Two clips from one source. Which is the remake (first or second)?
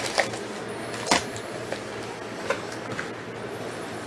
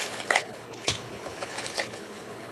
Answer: second